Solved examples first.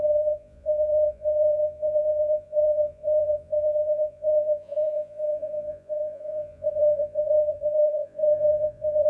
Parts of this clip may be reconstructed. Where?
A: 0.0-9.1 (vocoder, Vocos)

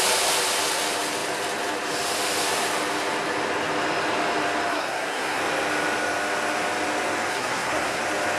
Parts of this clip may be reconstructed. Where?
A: 4.7-5.4 (codec, SNAC); 7.3-8.0

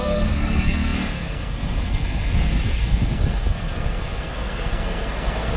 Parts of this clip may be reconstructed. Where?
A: 0.0-5.6 (codec, SNAC)

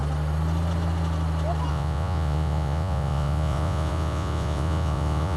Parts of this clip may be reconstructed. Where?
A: 1.7-5.4 (vocoder, Vocos)

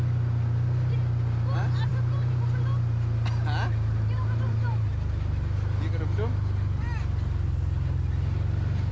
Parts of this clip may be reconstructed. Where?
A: 1.9-4.9 (vocoder, BigVGAN v2)